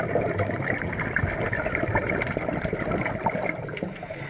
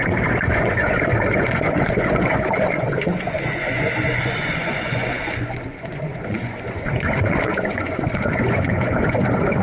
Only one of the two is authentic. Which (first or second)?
first